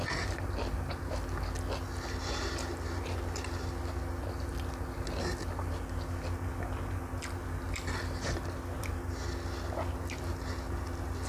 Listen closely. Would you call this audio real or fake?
real